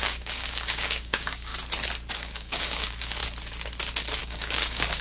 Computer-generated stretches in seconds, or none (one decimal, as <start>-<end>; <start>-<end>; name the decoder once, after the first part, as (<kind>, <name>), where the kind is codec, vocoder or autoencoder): 0.0-1.5 (codec, DAC); 2.1-3.2; 4.2-5.0